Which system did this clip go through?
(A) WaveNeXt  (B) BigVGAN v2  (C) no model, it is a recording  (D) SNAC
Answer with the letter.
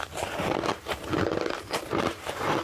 B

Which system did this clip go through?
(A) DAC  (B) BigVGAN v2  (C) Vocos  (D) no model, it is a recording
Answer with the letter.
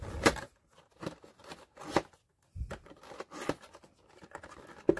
D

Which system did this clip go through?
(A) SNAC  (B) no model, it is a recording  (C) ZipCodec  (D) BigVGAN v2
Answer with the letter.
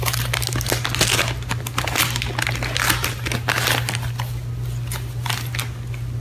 B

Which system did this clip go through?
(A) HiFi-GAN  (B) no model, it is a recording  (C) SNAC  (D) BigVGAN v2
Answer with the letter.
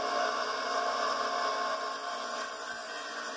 B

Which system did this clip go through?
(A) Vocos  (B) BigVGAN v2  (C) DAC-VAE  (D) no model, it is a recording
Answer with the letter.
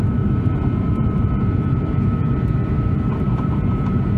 B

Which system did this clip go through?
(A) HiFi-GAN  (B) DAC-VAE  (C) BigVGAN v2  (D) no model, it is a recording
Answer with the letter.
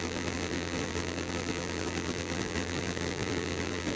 C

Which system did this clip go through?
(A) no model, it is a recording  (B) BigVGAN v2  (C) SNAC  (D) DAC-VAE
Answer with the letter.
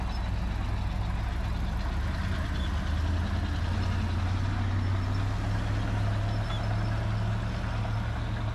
A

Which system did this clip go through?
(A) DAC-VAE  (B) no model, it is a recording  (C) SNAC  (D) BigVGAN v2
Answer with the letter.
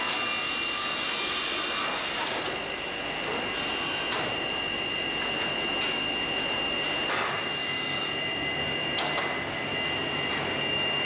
B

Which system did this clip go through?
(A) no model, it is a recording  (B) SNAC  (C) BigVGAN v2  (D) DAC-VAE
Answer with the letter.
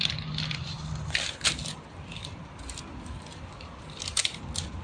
A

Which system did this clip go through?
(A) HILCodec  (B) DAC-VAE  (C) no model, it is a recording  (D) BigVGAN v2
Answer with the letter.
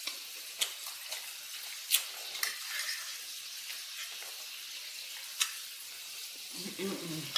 C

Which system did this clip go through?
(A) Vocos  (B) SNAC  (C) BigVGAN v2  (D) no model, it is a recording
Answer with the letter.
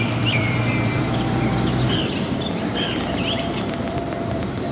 C